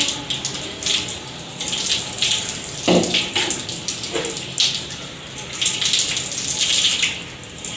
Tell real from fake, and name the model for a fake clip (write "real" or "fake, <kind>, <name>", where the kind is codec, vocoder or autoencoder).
real